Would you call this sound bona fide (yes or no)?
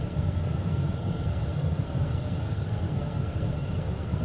no